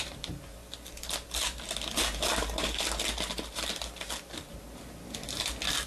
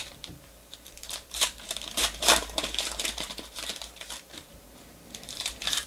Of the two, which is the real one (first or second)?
first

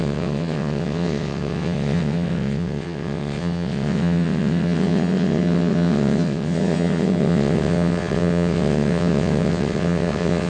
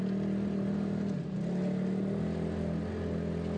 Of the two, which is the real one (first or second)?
second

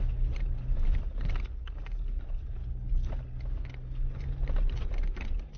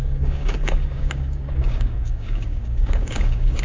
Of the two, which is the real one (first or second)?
first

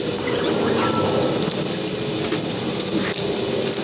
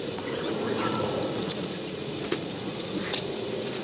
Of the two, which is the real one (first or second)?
first